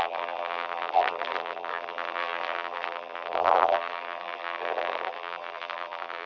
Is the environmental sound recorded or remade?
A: remade